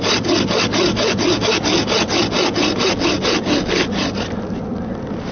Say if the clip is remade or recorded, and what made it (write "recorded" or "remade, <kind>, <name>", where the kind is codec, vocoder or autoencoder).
recorded